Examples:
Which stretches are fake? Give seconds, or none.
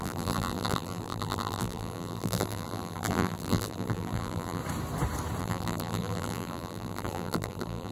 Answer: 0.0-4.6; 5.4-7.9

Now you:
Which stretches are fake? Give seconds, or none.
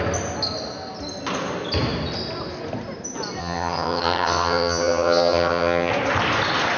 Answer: 3.4-5.9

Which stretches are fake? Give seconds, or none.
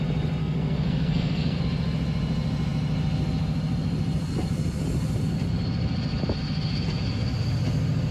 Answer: 0.4-1.6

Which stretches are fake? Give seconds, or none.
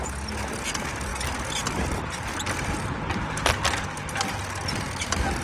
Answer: none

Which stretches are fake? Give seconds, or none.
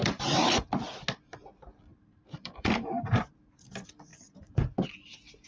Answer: 0.0-0.6; 1.9-3.4; 4.1-4.7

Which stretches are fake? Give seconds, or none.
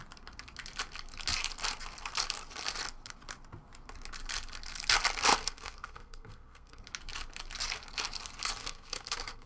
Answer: 5.3-6.8; 8.6-9.5